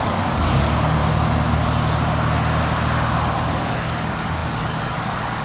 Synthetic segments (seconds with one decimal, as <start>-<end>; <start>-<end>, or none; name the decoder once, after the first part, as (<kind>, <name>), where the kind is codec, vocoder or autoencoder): 0.0-1.0 (codec, DAC); 3.4-5.4